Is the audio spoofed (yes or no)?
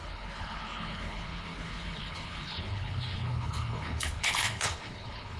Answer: yes